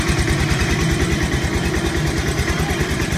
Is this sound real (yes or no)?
yes